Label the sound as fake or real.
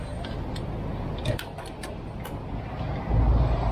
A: real